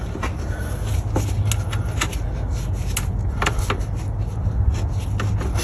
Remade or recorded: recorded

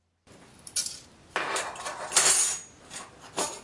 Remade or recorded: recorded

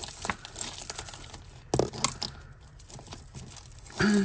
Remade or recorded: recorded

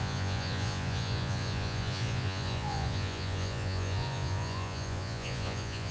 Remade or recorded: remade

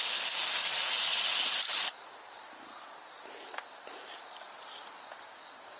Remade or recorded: recorded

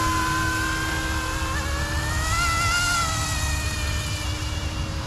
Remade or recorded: recorded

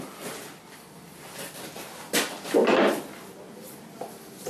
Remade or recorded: recorded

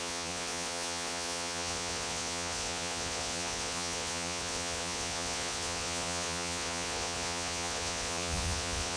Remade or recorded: remade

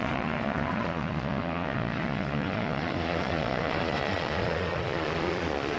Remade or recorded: remade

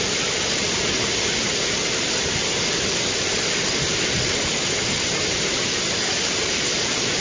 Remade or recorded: recorded